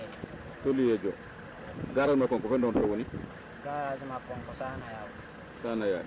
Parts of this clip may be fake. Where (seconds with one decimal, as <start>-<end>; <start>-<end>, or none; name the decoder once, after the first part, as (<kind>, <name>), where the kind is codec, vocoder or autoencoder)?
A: none